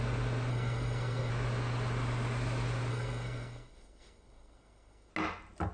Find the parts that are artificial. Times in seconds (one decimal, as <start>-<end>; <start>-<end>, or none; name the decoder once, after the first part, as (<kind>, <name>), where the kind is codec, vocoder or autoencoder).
0.5-1.3 (codec, SNAC); 2.9-5.1